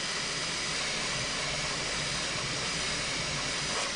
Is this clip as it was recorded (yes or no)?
yes